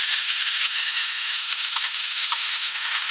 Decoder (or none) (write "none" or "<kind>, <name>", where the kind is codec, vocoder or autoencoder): autoencoder, DAC-VAE